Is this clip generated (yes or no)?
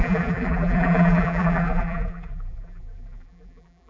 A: yes